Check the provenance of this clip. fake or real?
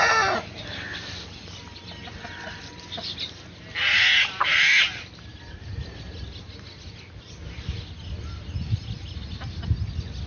real